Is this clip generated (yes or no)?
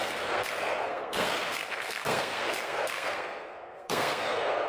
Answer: yes